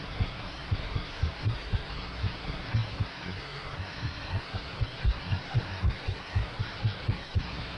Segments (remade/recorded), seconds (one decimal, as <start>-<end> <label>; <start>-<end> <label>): 0.0-7.8 remade